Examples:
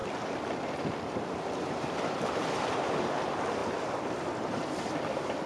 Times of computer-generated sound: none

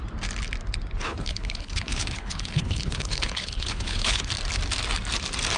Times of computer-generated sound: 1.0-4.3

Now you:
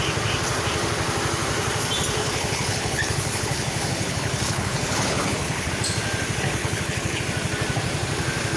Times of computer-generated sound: 2.2-5.7; 6.6-7.2